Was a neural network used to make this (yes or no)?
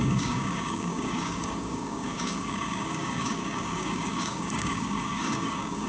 yes